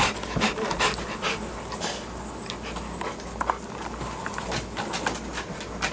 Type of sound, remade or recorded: recorded